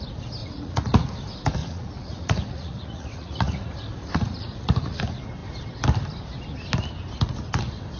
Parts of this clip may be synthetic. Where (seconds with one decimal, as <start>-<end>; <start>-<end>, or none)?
0.4-1.0; 1.6-5.0